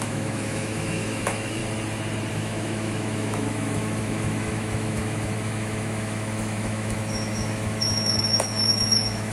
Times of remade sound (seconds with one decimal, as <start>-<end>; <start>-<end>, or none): 0.0-1.6; 2.3-9.3